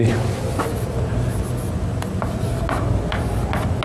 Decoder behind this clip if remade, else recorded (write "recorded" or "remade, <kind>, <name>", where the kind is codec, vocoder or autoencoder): recorded